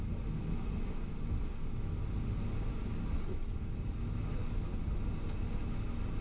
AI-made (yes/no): no